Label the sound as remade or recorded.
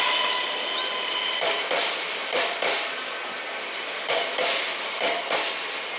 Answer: recorded